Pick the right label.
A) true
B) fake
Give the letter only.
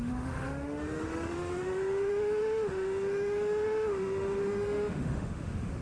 B